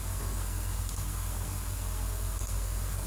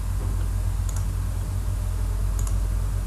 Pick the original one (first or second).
second